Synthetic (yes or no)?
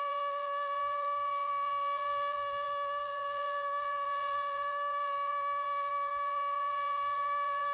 yes